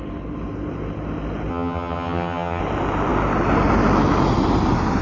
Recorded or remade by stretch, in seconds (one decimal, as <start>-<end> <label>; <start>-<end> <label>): 0.0-1.5 recorded; 1.5-2.6 remade; 2.6-5.0 recorded